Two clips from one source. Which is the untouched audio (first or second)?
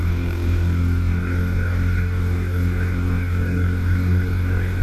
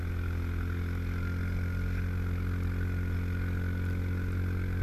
second